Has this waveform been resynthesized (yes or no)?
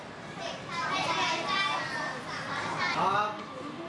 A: no